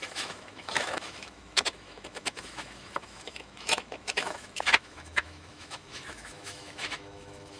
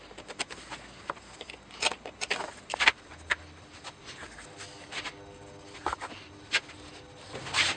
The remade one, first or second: first